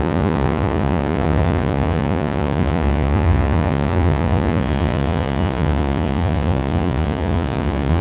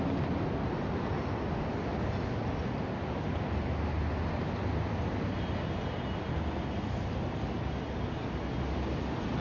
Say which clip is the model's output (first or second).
first